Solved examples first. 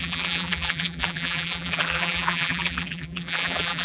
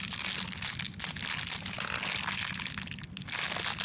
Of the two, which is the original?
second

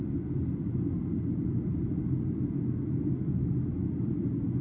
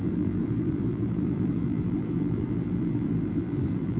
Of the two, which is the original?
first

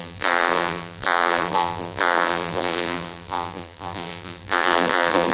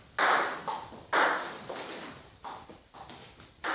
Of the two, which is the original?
second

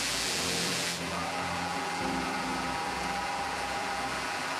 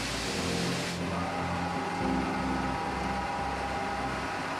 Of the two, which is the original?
second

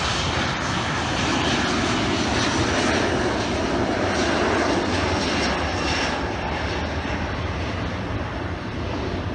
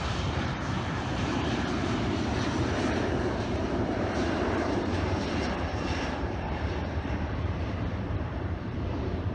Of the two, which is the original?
first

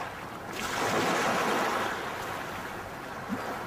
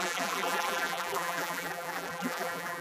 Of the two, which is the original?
first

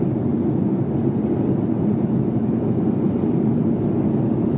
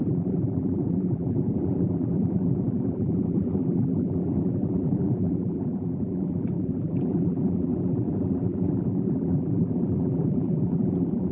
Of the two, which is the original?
first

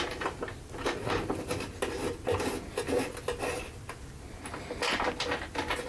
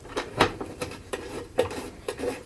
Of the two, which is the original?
first